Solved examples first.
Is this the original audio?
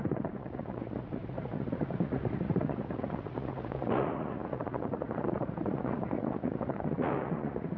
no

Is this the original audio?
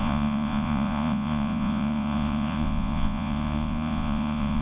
no